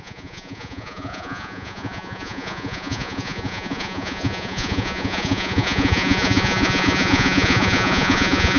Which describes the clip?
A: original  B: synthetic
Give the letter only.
B